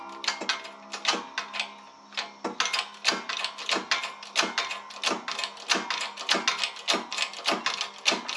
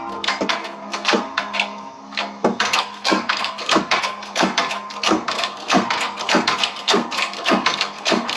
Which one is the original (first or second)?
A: first